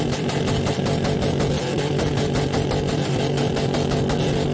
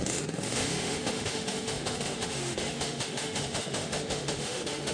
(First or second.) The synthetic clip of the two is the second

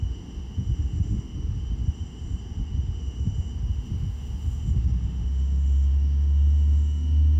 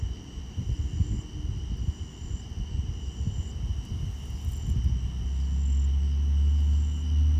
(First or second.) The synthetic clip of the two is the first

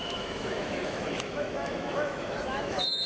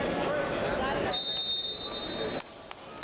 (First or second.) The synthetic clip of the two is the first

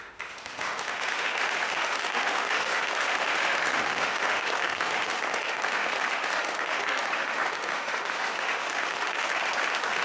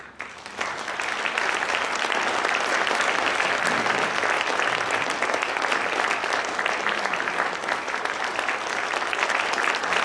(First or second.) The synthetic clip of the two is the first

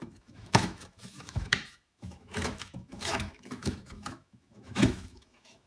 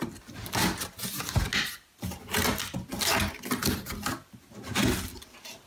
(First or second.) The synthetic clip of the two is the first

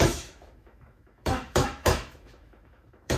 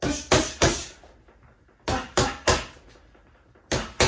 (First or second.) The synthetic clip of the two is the first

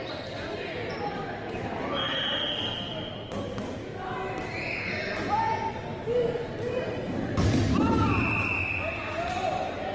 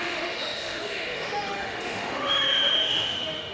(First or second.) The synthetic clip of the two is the second